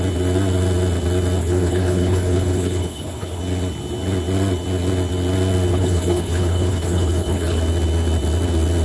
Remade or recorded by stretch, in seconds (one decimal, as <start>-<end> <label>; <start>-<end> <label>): 0.0-1.4 recorded; 1.4-3.4 remade; 3.4-5.7 recorded; 5.7-7.6 remade; 7.6-8.8 recorded